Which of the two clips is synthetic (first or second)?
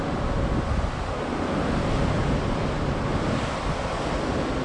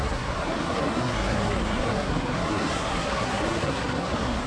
second